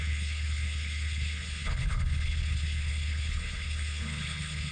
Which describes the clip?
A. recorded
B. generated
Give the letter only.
B